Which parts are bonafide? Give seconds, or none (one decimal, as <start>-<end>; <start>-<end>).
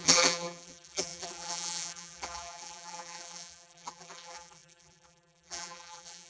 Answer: none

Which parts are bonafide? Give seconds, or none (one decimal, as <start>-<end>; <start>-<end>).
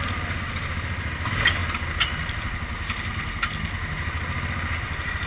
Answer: 1.6-4.8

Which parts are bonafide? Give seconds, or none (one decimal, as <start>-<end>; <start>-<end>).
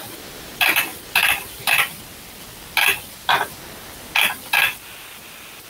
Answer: 0.0-5.7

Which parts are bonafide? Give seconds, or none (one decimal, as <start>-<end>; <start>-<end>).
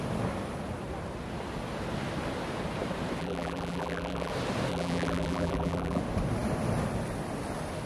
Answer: 0.0-3.2; 4.3-4.7; 6.0-7.9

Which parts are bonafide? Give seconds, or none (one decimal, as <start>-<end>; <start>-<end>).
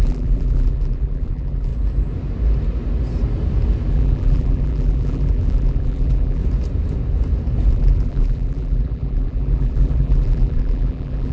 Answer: 1.7-3.9; 6.4-7.7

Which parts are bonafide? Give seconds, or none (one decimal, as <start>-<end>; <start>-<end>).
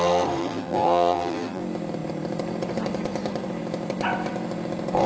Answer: 0.0-0.4; 1.6-5.1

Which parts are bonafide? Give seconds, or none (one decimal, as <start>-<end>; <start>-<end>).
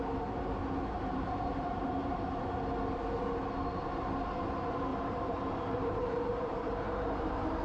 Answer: 0.0-0.6; 2.4-4.9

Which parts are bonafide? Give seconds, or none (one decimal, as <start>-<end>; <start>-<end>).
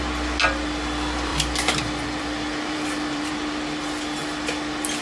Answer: 0.0-1.3; 3.3-5.0